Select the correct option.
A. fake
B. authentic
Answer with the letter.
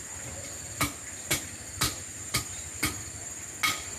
B